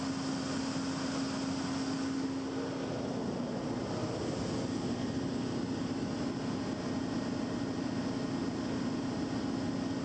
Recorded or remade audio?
recorded